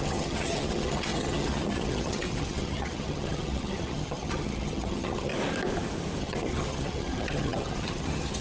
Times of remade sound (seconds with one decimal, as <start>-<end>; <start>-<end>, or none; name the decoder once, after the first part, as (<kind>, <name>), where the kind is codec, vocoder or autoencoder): 0.0-5.3 (vocoder, HiFi-GAN); 6.2-8.4